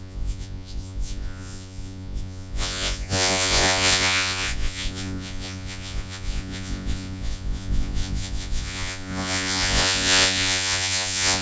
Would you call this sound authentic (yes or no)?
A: no